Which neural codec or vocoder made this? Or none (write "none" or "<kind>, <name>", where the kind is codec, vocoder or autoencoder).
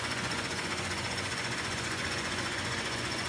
vocoder, Vocos